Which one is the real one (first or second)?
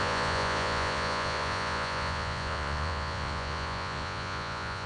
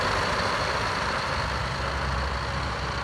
second